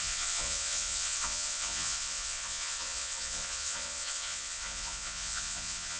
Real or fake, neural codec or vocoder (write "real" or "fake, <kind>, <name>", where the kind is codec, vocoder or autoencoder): fake, vocoder, Vocos